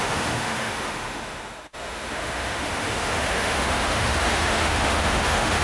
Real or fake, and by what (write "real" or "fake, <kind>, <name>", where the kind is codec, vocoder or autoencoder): fake, autoencoder, DAC-VAE